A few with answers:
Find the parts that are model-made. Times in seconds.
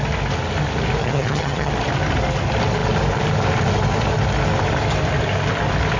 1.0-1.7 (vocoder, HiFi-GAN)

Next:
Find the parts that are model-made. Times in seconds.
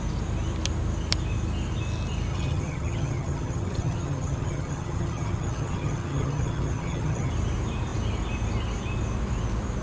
2.3-7.3 (vocoder, HiFi-GAN)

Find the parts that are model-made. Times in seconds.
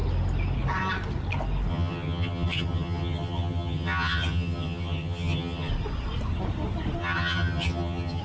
1.7-5.7 (vocoder, HiFi-GAN); 7.0-8.2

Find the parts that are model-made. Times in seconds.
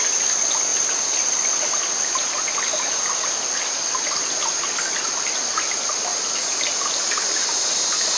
none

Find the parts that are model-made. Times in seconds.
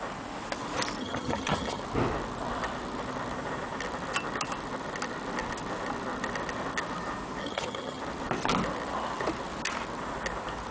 1.0-1.8 (vocoder, HiFi-GAN); 7.4-8.0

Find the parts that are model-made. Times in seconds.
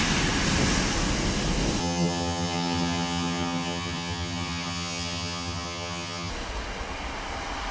1.8-6.3 (vocoder, HiFi-GAN)